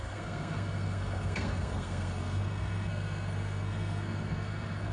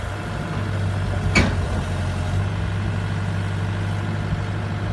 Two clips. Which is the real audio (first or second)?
second